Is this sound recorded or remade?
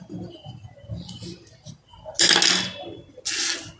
recorded